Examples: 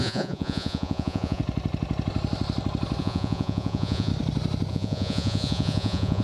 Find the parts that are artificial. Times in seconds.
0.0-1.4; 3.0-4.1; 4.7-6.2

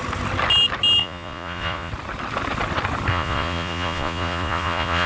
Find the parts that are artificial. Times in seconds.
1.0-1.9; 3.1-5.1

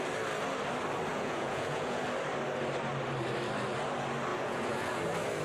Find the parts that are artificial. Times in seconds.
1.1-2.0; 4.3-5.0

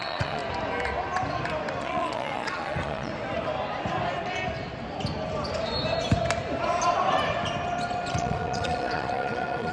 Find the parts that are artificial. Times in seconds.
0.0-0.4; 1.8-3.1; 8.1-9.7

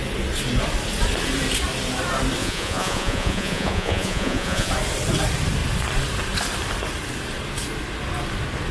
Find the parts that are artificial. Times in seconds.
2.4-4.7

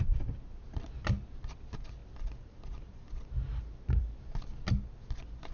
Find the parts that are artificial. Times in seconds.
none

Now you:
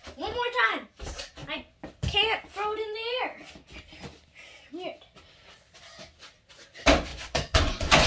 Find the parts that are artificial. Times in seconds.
7.1-8.1

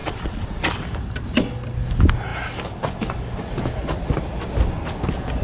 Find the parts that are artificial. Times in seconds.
0.0-0.7